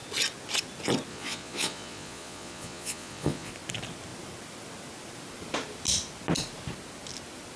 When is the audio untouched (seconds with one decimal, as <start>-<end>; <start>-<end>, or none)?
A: 0.0-1.1; 3.5-7.6